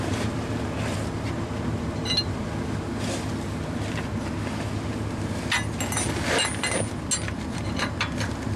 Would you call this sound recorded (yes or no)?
yes